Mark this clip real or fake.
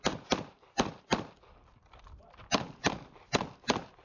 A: real